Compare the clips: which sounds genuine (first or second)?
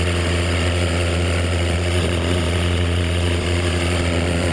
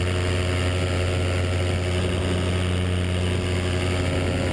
second